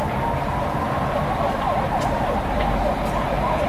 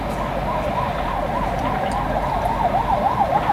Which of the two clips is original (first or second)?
second